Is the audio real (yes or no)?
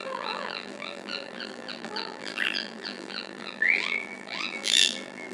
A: no